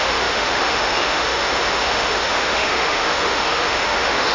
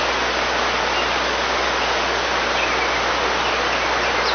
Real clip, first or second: second